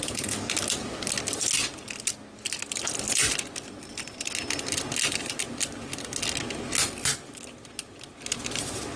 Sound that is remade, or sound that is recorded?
recorded